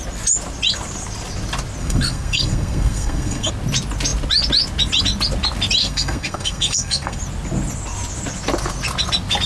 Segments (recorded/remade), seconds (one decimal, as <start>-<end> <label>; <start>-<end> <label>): 0.0-1.8 recorded; 1.8-3.5 remade; 3.5-5.8 recorded; 5.8-7.2 remade; 7.2-9.5 recorded